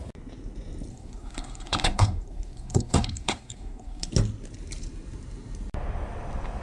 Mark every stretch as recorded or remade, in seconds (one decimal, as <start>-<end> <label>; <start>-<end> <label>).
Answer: 0.0-0.9 recorded; 0.9-4.1 remade; 4.1-6.6 recorded